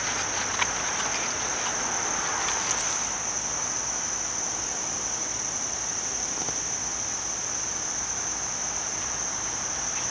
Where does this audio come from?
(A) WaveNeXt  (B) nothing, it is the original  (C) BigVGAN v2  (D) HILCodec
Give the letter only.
B